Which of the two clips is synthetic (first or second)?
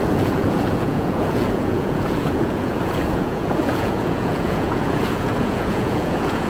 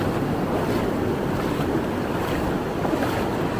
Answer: first